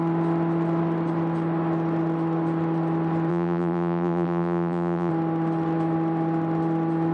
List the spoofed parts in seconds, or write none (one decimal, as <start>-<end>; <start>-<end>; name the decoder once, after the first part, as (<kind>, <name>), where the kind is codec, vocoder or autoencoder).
3.3-5.1 (vocoder, BigVGAN v2)